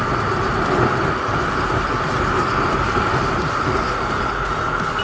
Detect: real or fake real